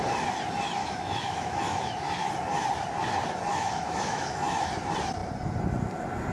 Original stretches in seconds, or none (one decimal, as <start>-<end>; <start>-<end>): 0.0-0.8; 2.3-3.5; 4.7-6.3